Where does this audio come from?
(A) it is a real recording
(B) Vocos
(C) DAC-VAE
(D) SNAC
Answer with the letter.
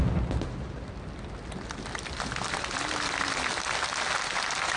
A